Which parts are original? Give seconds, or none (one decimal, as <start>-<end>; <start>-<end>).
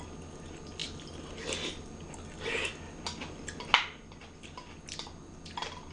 0.0-5.9